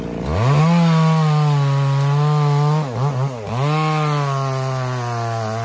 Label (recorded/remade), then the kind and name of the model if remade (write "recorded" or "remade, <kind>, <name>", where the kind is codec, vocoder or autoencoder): recorded